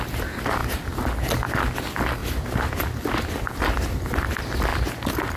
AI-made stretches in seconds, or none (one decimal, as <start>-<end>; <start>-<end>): none